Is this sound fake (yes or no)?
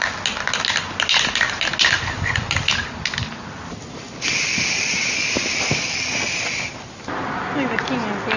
no